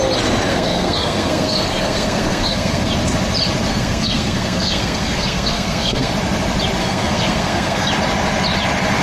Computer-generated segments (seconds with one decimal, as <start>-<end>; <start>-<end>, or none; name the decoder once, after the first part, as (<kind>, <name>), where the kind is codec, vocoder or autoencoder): 0.5-2.9 (codec, SNAC); 3.7-6.1; 6.8-7.9